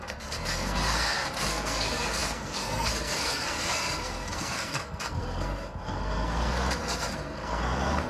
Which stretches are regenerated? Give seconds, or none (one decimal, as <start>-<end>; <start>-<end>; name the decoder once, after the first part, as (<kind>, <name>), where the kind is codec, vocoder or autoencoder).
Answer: 0.0-8.1 (codec, SNAC)